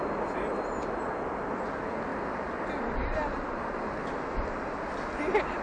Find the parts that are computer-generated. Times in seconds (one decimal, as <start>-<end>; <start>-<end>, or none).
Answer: none